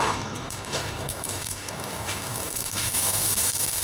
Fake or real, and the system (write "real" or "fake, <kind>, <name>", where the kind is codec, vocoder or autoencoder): fake, codec, DAC